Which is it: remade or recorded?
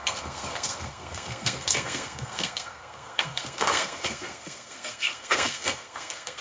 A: remade